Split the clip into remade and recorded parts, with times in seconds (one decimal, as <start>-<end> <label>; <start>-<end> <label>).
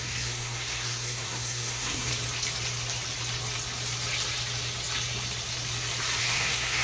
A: 0.0-2.1 remade; 2.1-6.2 recorded; 6.2-6.8 remade